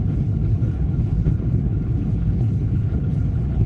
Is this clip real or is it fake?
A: fake